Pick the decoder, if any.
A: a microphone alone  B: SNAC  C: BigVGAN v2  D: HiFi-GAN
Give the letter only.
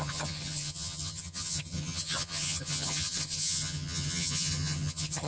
D